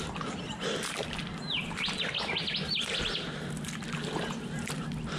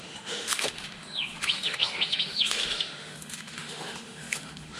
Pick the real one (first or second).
first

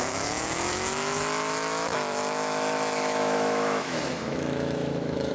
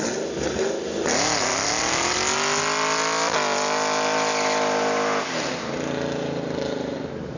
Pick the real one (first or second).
second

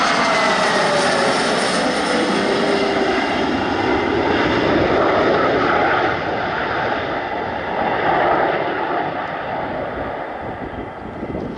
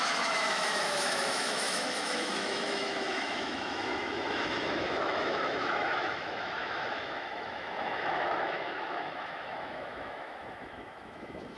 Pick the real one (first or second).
first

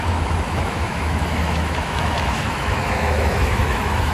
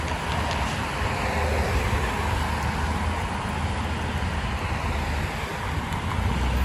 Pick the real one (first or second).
second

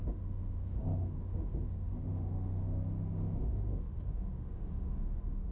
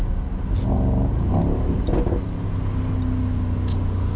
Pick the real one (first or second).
second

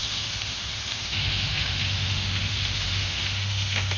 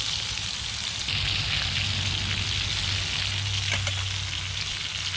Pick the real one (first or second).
second